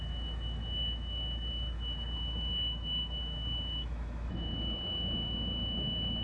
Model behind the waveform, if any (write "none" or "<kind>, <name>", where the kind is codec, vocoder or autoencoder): autoencoder, DAC-VAE